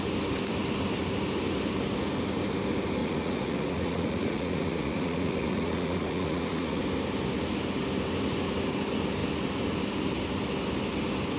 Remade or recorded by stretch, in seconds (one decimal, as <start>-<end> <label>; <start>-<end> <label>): 0.0-3.0 recorded; 3.0-6.8 remade; 6.8-11.4 recorded